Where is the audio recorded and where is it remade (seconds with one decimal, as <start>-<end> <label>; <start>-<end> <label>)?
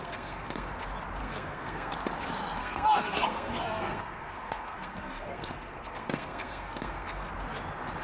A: 0.0-0.7 remade; 0.7-1.2 recorded; 1.2-1.9 remade; 1.9-2.6 recorded; 2.6-7.3 remade; 7.3-8.0 recorded